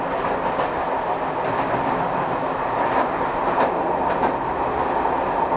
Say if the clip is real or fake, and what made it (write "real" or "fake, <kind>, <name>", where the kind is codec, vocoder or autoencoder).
real